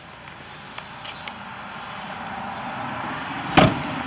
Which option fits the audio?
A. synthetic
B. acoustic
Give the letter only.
B